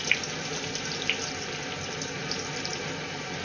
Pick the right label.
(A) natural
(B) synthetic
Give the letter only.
A